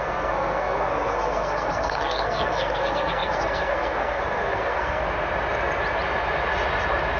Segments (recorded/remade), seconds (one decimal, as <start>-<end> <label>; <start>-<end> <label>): 0.0-5.0 remade; 5.0-7.2 recorded